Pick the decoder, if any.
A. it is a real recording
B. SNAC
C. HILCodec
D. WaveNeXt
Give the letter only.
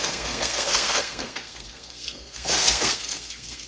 B